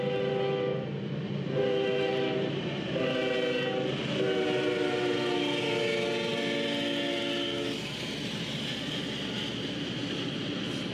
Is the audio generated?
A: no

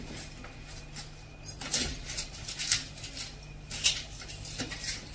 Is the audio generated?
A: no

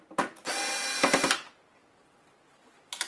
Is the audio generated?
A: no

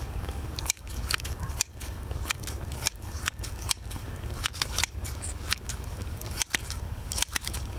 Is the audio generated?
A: yes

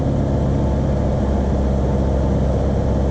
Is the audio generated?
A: no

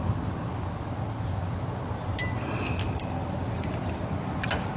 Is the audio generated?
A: no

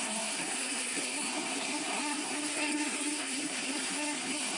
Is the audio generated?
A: yes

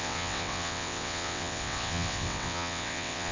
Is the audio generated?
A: yes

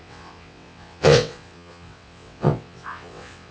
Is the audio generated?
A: yes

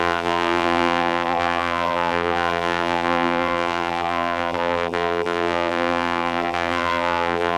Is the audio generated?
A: yes